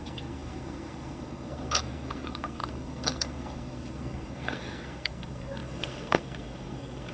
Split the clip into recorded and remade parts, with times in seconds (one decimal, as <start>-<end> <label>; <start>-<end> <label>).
0.0-7.1 remade